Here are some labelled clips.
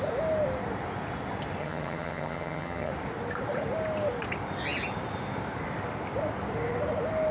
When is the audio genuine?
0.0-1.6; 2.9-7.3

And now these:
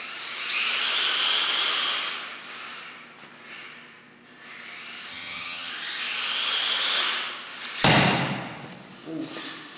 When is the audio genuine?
0.0-5.1; 5.7-9.8

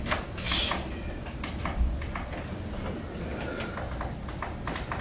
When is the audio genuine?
0.0-5.0

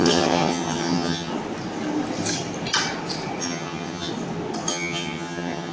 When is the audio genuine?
1.3-3.4; 4.1-4.7

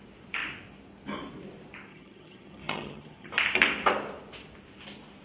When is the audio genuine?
0.0-1.9; 3.3-5.2